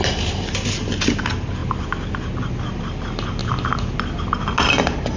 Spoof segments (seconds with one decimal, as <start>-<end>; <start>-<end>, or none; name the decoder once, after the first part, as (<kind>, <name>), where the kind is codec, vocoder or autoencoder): 3.4-4.2 (vocoder, BigVGAN v2)